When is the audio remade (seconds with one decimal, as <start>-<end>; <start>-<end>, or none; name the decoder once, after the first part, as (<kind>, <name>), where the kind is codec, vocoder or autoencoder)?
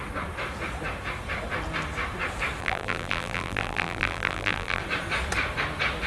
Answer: 2.6-4.8 (vocoder, BigVGAN v2)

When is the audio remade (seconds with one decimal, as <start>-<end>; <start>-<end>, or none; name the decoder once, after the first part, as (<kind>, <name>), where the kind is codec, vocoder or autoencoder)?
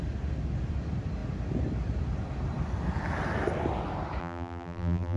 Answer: 4.2-5.2 (vocoder, BigVGAN v2)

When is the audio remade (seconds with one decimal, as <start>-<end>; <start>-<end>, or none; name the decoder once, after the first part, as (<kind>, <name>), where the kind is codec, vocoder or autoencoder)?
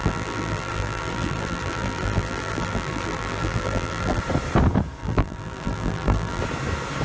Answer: 0.0-4.2 (vocoder, BigVGAN v2); 5.0-6.4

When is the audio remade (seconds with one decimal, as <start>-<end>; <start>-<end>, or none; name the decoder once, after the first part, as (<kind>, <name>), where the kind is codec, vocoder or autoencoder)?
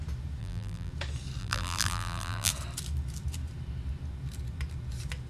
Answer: 0.4-0.9 (vocoder, BigVGAN v2); 1.4-2.5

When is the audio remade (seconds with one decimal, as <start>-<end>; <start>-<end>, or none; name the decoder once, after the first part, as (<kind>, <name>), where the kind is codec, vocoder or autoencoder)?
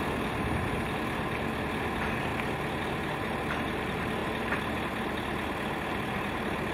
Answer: 4.2-4.8 (vocoder, BigVGAN v2)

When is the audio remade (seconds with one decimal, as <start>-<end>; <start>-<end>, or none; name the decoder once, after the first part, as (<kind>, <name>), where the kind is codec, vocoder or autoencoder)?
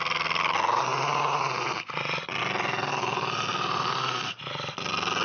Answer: 3.5-4.4 (vocoder, BigVGAN v2)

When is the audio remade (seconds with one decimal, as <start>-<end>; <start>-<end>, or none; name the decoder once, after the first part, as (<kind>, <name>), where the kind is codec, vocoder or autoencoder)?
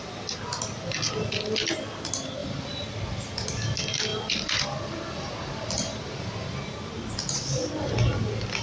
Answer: 2.4-3.5 (vocoder, BigVGAN v2); 4.1-6.6